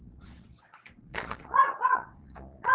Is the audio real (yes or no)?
no